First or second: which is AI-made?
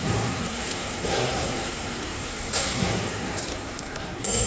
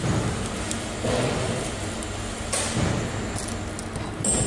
first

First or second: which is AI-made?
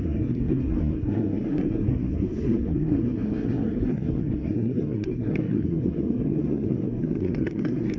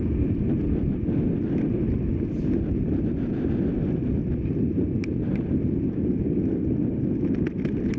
first